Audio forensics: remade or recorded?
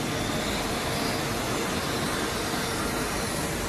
recorded